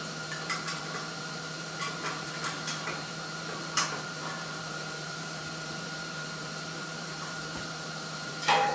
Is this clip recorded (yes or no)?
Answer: no